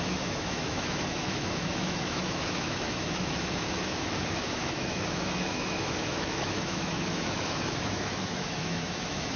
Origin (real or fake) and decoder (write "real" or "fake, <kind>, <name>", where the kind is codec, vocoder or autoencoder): fake, autoencoder, DAC-VAE